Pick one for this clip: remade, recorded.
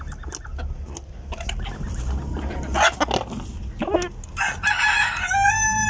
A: recorded